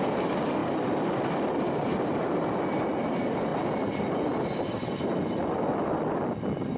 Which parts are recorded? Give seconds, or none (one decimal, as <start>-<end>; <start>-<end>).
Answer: 0.0-6.8